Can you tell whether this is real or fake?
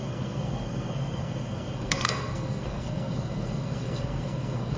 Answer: fake